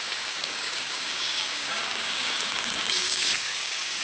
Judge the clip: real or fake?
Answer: fake